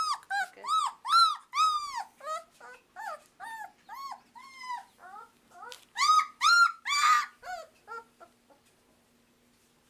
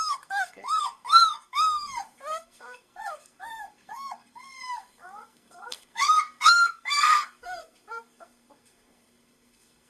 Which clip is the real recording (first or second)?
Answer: first